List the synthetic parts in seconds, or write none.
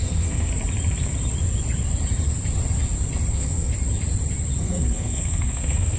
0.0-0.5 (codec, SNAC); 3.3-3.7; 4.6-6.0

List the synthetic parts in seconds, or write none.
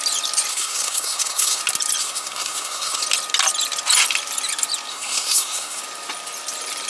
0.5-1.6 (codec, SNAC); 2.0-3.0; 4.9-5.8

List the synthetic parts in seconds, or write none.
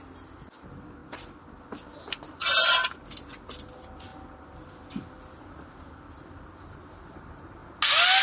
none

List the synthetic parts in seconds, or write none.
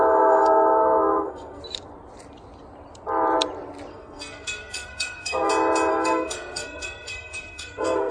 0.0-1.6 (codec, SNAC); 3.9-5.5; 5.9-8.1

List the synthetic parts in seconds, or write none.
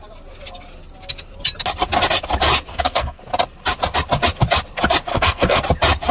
2.7-3.2 (codec, SNAC); 5.1-5.6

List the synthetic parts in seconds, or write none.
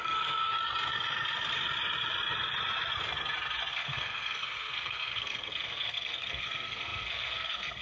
0.0-0.6 (codec, SNAC); 3.7-7.8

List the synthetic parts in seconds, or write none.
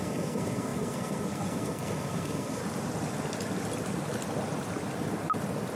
0.0-2.6 (codec, SNAC)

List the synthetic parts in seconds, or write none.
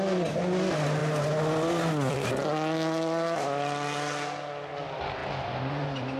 none